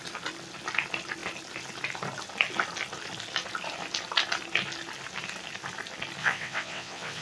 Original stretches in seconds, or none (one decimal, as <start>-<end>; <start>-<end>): 0.0-6.2